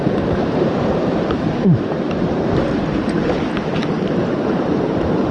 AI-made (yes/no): yes